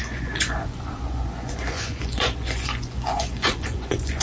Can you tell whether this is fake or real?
fake